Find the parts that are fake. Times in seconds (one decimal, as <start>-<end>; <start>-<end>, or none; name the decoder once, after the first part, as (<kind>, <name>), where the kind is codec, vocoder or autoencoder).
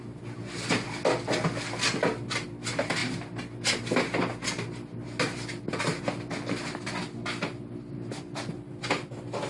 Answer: none